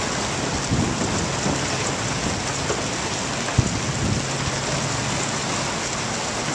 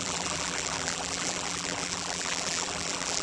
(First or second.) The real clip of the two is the first